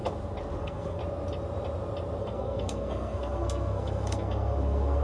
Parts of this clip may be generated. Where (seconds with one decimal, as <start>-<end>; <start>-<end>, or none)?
0.6-1.0; 2.2-5.0